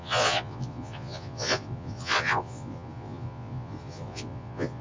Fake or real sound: fake